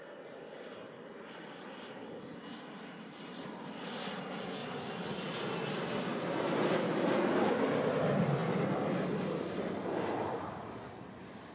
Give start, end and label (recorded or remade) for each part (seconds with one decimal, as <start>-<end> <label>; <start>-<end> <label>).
0.0-11.5 recorded